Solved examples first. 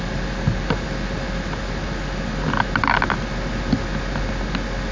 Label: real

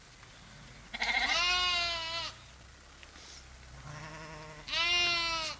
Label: real